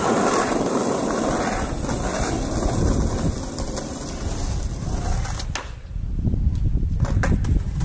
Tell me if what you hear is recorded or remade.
recorded